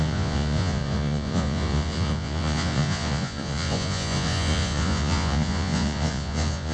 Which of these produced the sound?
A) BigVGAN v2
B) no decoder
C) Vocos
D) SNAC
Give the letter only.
C